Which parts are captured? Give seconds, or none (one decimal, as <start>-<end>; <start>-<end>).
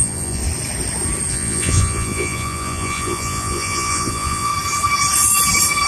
0.4-1.3; 4.5-5.9